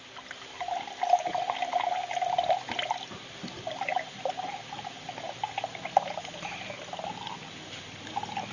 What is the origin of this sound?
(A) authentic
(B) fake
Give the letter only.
A